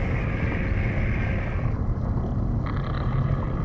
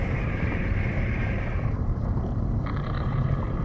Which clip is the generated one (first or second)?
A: second